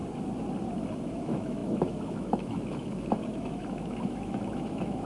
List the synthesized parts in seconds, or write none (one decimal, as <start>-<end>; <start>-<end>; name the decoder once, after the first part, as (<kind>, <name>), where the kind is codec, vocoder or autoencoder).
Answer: 1.1-5.1 (autoencoder, DAC-VAE)